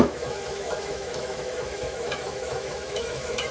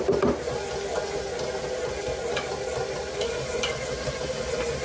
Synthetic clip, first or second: first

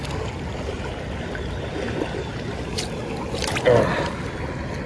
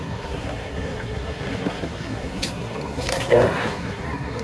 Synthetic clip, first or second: second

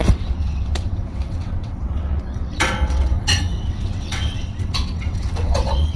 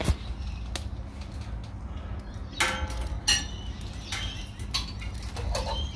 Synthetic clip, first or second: first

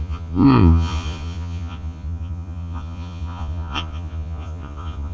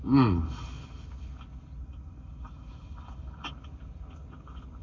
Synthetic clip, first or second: first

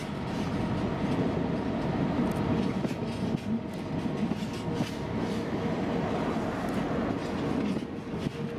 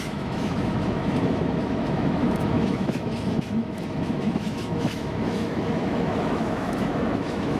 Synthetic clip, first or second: second